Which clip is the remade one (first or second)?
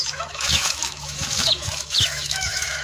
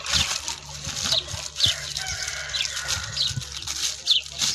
first